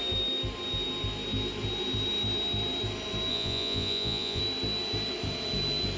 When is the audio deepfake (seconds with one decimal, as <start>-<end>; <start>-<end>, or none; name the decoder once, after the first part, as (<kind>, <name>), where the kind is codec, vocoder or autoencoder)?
3.3-4.4 (vocoder, Vocos)